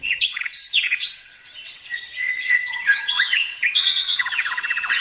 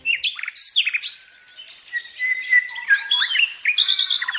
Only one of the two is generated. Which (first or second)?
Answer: first